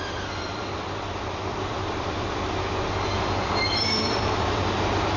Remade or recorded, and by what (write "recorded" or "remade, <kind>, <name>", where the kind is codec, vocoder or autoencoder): remade, vocoder, BigVGAN v2